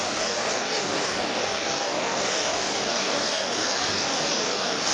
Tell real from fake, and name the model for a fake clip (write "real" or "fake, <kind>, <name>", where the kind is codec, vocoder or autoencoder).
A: fake, codec, DAC